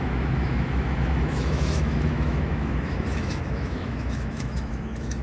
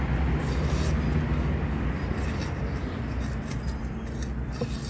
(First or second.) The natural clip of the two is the second